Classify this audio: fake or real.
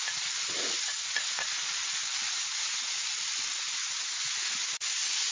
real